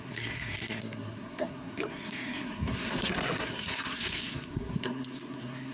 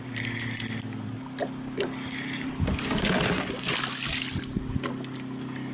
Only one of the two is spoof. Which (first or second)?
first